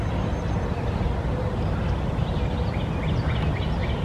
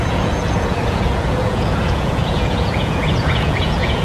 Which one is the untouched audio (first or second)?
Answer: first